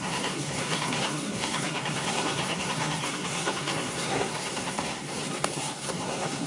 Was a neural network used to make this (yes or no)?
yes